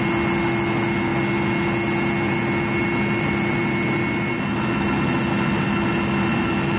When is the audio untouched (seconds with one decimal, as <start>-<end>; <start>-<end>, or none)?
0.0-6.8